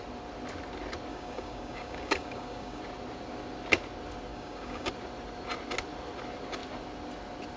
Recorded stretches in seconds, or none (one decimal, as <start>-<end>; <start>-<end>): 0.0-1.1; 2.8-4.3; 4.9-7.6